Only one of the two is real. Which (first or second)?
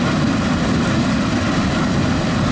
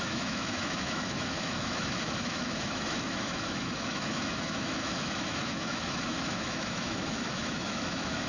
first